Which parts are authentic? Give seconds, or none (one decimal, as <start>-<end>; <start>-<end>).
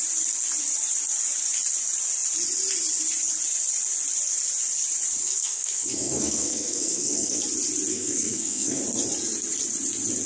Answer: 0.0-5.2; 7.4-7.9; 8.8-10.3